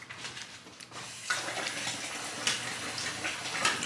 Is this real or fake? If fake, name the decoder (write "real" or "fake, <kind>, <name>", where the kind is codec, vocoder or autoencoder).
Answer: real